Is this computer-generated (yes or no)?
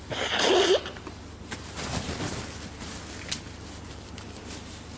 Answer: no